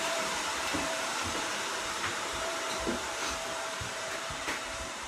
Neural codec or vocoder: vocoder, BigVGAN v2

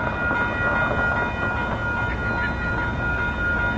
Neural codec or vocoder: none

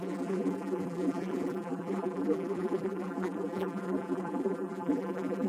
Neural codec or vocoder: vocoder, BigVGAN v2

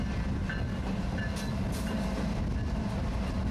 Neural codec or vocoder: none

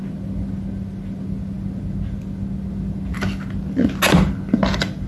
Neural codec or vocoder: none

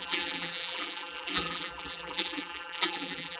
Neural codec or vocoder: vocoder, BigVGAN v2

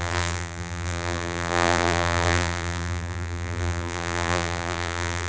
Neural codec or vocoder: vocoder, BigVGAN v2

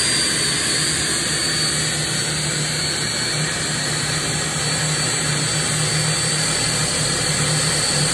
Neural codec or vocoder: none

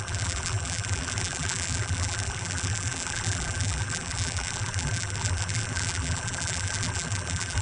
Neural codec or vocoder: vocoder, BigVGAN v2